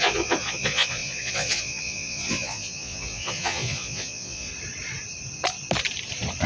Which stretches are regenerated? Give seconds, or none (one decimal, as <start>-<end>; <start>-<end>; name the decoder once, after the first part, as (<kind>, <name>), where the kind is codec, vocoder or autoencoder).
0.0-4.5 (vocoder, Vocos)